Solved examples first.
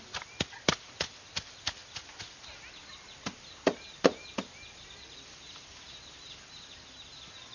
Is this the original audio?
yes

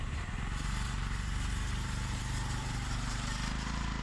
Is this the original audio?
no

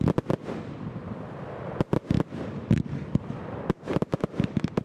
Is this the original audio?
yes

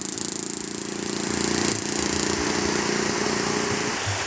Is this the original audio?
yes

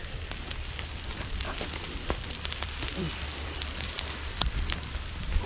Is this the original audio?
no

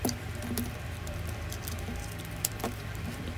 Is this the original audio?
no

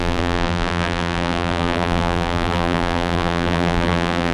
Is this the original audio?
no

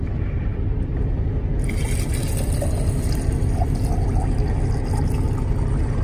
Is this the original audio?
yes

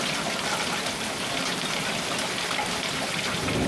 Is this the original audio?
yes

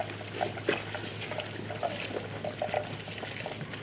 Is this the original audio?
yes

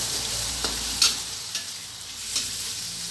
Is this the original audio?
no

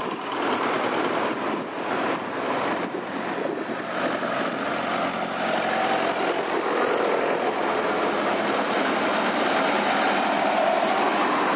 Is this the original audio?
yes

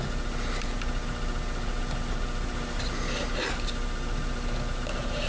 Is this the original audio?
yes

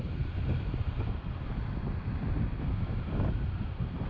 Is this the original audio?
yes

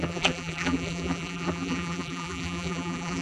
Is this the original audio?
no